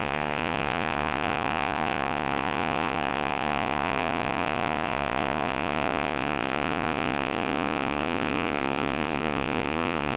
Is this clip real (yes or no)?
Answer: no